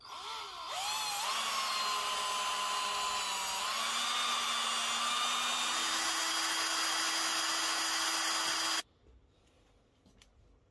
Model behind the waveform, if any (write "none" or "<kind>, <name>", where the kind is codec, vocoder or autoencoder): none